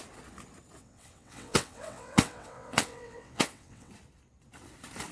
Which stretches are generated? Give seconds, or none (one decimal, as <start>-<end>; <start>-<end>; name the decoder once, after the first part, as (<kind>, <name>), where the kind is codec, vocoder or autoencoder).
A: 0.8-3.9 (vocoder, WaveNeXt)